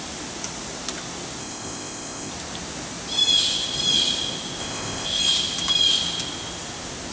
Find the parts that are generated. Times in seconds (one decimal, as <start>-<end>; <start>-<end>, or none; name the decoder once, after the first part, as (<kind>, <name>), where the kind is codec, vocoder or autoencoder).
1.4-2.3 (codec, ZipCodec); 4.6-5.2